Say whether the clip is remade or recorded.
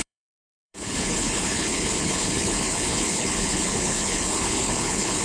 remade